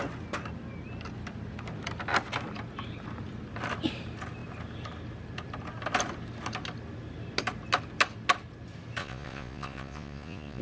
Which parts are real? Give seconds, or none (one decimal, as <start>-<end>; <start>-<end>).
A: 0.0-9.0